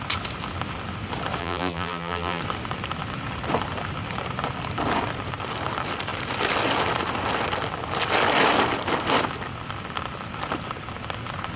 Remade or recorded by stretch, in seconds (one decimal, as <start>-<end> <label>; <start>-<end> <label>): 0.0-1.4 recorded; 1.4-2.4 remade; 2.4-11.6 recorded